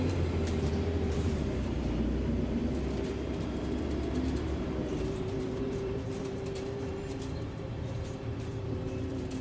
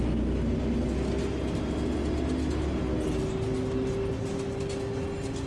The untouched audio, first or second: second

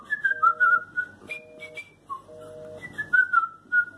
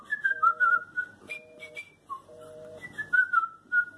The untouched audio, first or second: first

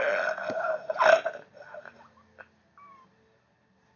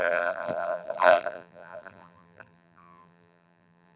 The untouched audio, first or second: first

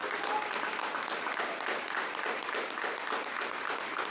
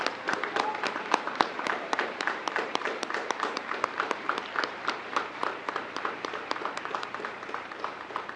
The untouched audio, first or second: first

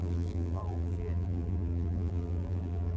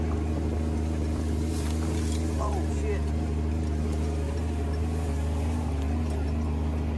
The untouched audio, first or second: second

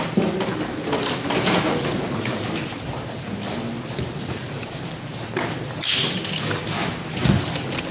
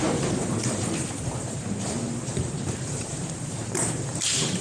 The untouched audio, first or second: first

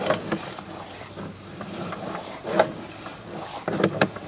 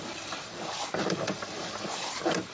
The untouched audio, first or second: first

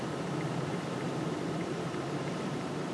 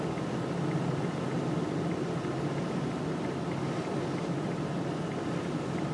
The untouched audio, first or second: second